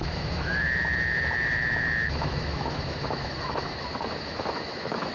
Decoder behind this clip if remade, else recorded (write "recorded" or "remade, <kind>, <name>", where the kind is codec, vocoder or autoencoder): remade, autoencoder, DAC-VAE